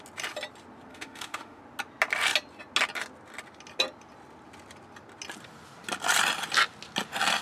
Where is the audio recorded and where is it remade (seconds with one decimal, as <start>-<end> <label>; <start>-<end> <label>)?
0.0-0.9 recorded; 0.9-1.6 remade; 1.6-7.4 recorded